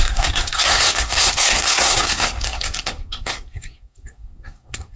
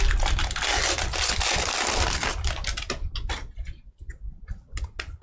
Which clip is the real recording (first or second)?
second